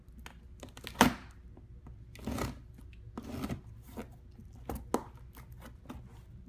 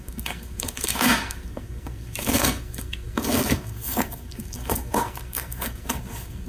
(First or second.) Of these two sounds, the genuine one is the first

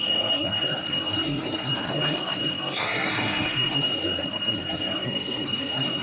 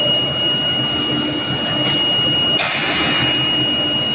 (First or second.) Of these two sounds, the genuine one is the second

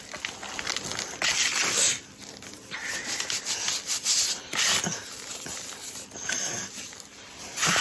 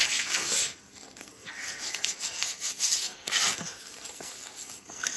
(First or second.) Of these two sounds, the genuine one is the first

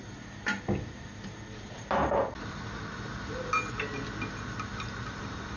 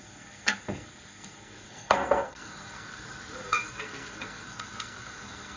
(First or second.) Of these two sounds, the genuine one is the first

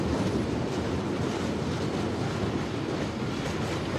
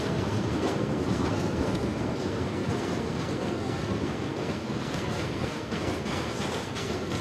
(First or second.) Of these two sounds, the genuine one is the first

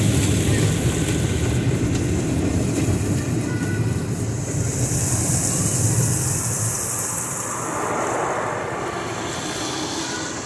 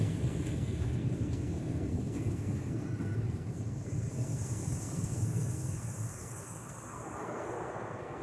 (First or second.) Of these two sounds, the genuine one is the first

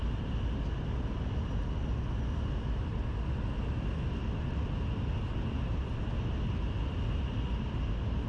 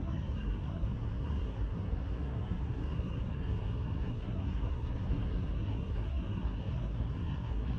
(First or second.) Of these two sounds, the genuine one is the first